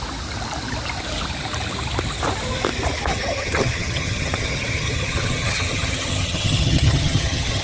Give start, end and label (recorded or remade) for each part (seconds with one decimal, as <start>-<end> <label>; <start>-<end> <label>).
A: 0.0-3.1 recorded; 3.1-7.6 remade